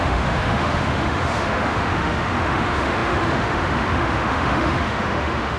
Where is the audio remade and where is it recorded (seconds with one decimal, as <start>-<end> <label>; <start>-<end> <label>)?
0.0-5.6 remade

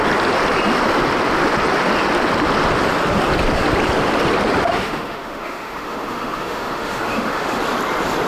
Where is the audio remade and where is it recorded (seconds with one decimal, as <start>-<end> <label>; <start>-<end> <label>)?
0.0-4.7 recorded; 4.7-7.6 remade; 7.6-8.3 recorded

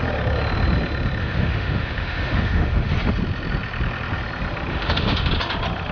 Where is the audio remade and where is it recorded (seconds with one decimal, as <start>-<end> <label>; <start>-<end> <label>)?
0.0-1.2 recorded; 1.2-2.9 remade; 2.9-4.7 recorded; 4.7-5.3 remade; 5.3-5.9 recorded

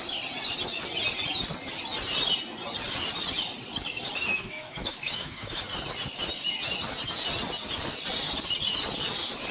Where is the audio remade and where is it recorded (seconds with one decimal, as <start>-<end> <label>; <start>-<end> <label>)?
0.0-4.2 recorded; 4.2-5.6 remade; 5.6-9.5 recorded